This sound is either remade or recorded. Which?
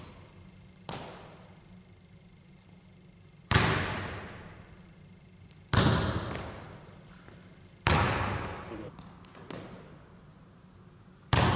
recorded